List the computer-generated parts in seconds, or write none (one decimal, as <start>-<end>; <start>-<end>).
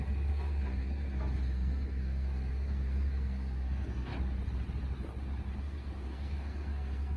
0.0-4.1; 5.6-7.2